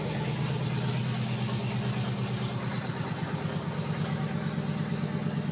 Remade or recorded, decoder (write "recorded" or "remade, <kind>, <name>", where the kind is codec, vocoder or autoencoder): recorded